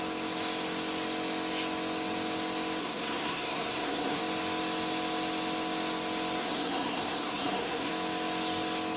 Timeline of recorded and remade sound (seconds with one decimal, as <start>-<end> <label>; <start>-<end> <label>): 0.0-2.8 recorded; 2.8-4.2 remade; 4.2-6.4 recorded; 6.4-7.9 remade; 7.9-9.0 recorded